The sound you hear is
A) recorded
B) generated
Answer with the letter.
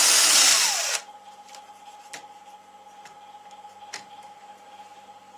A